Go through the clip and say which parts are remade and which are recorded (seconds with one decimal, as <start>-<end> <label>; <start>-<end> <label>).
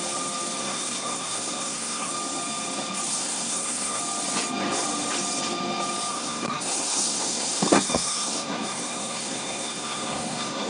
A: 0.0-0.6 recorded; 0.6-2.1 remade; 2.1-3.1 recorded; 3.1-4.0 remade; 4.0-6.1 recorded; 6.1-10.7 remade